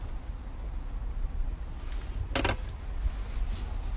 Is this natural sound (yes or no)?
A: yes